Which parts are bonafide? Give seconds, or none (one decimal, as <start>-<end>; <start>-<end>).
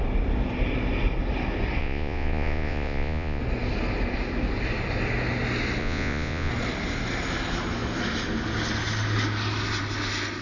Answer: 0.0-1.8; 3.4-5.8; 6.5-10.4